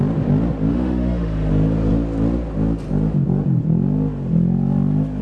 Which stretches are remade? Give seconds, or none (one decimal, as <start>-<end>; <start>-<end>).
0.7-1.5